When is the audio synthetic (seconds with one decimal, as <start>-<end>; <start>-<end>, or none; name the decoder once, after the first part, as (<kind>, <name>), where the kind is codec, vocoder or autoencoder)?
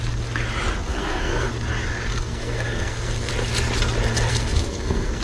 0.9-1.5 (codec, SNAC); 2.1-3.3; 4.3-5.2